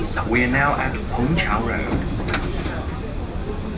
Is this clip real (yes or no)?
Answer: yes